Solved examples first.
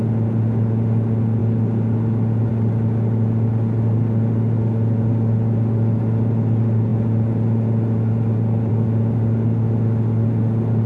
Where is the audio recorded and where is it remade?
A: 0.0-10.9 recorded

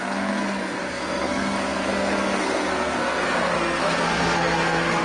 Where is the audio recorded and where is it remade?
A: 0.0-5.0 remade

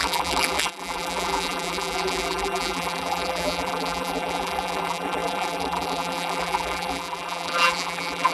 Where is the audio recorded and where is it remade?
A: 0.0-8.3 remade